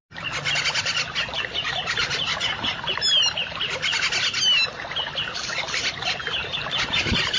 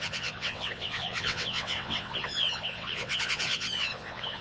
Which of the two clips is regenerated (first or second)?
second